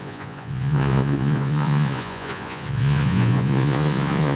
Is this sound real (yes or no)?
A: no